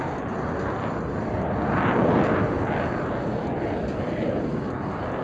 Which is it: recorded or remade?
recorded